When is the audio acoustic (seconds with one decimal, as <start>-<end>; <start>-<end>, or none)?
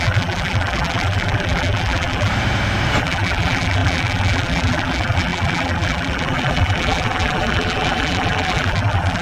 2.3-3.0